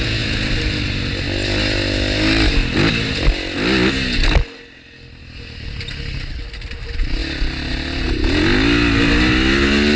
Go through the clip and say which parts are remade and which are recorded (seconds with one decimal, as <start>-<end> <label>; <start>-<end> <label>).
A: 0.0-10.0 recorded